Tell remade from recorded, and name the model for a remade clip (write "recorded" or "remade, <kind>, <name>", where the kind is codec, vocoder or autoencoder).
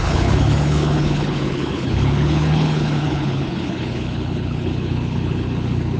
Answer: remade, codec, HILCodec